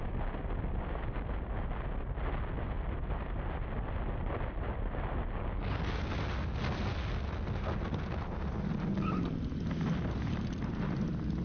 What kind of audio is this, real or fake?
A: real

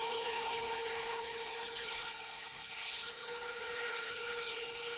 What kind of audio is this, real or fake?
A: fake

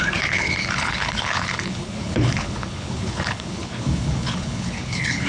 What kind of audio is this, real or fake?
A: fake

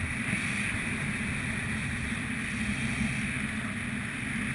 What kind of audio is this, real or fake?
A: real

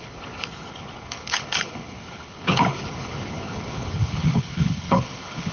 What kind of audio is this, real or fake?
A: fake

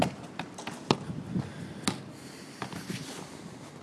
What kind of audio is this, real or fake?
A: real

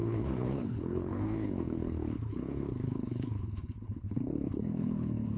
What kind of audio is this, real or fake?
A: fake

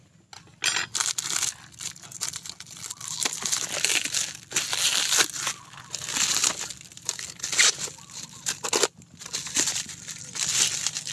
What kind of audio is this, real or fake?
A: real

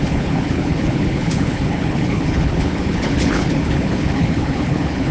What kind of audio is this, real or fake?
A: fake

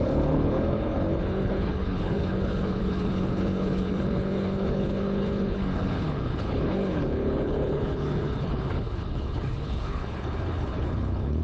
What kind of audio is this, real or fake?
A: fake